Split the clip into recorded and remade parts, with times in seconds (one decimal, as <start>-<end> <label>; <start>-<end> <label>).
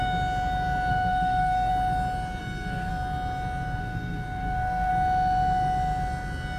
0.0-0.9 recorded; 0.9-1.7 remade; 1.7-2.4 recorded; 2.4-2.9 remade; 2.9-3.8 recorded; 3.8-4.9 remade; 4.9-6.6 recorded